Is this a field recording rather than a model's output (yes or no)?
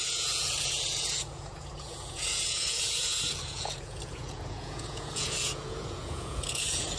no